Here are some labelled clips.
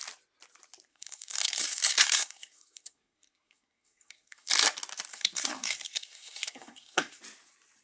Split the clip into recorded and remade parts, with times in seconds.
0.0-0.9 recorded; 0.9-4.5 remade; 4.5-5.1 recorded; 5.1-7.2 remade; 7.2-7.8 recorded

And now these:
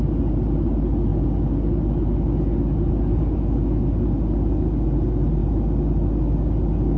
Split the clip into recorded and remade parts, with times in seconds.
0.0-7.0 recorded

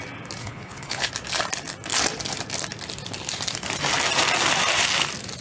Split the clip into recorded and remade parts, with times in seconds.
0.0-0.4 recorded; 0.4-1.1 remade; 1.1-5.4 recorded

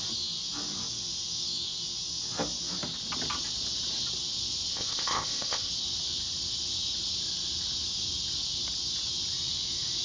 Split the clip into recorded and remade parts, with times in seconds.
0.0-4.7 recorded; 4.7-5.7 remade; 5.7-10.0 recorded

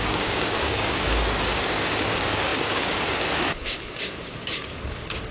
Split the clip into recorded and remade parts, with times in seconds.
0.0-5.3 remade

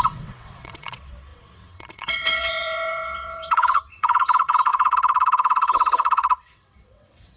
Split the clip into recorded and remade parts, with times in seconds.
0.0-7.4 remade

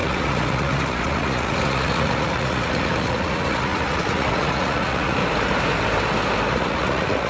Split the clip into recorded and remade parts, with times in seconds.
0.0-5.2 remade; 5.2-6.5 recorded; 6.5-7.3 remade